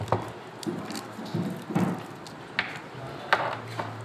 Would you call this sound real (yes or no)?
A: yes